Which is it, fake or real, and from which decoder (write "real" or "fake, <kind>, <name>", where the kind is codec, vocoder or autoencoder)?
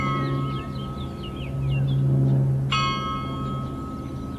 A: real